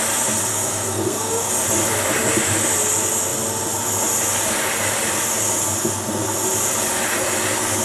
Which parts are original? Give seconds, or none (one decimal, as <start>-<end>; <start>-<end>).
0.0-0.5; 1.5-7.8